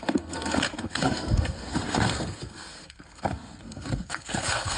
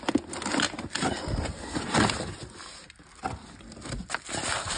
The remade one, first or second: first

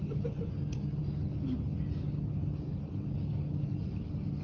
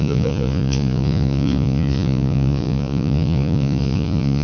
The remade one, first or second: second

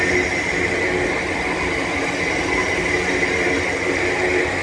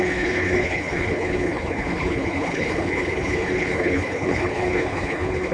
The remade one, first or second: second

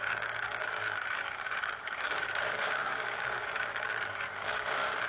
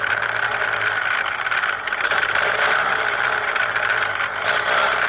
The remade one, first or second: first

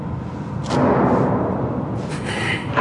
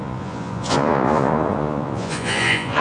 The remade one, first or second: second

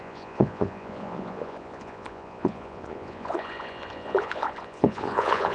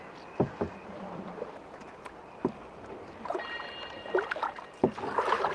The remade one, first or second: first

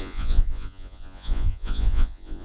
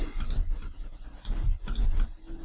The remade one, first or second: first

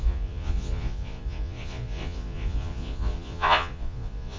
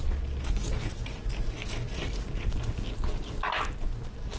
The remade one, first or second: first